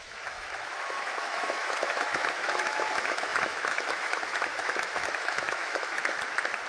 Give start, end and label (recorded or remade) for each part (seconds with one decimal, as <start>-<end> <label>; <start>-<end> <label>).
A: 0.0-6.0 remade; 6.0-6.7 recorded